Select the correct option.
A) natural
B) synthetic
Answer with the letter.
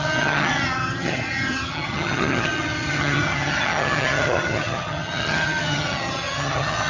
B